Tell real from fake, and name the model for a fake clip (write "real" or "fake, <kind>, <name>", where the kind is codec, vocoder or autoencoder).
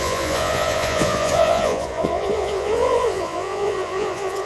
fake, vocoder, Vocos